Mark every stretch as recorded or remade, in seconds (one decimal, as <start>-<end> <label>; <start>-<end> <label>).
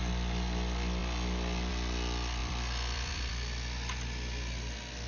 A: 0.0-2.4 recorded; 2.4-3.3 remade; 3.3-5.1 recorded